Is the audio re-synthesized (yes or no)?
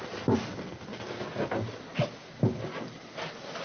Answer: no